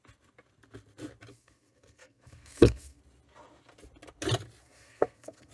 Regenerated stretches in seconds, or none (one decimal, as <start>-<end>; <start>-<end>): 1.3-3.0; 4.6-5.5